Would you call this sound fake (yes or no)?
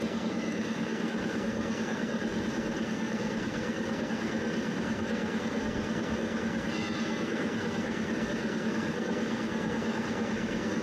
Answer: yes